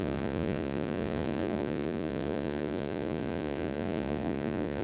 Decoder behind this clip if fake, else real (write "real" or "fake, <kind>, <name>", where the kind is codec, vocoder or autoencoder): fake, vocoder, Vocos